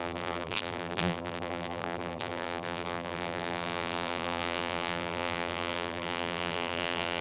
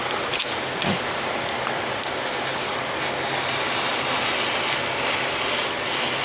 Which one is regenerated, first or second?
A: first